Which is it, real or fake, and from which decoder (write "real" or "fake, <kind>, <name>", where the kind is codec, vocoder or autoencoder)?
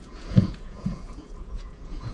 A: fake, vocoder, Vocos